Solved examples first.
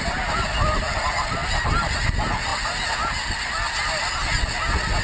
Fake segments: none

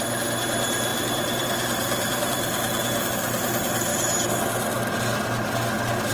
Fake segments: 0.9-3.1

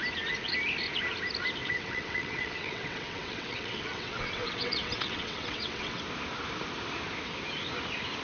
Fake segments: 1.6-6.0

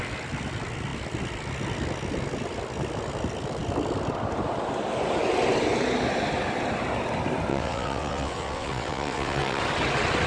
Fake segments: 7.5-9.6

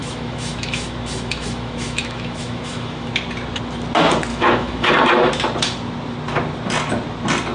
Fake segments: 0.0-3.1; 4.3-4.9

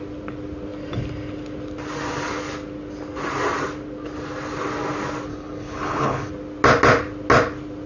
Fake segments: 5.3-6.3

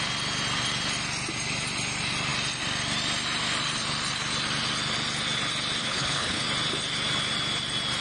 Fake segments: 5.8-6.4

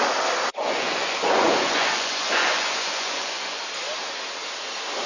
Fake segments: 0.5-3.6